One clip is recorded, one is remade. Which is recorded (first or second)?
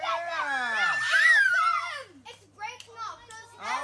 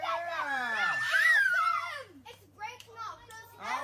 first